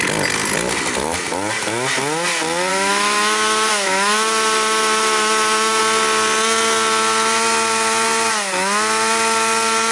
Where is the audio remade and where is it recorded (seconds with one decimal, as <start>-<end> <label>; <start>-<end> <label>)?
0.0-2.7 recorded; 2.7-5.8 remade; 5.8-9.9 recorded